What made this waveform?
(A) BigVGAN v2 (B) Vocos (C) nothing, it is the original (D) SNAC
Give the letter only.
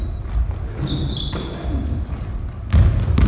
C